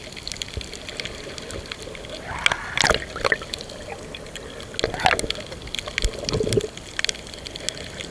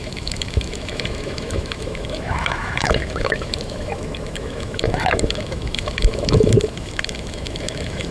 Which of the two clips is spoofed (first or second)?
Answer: second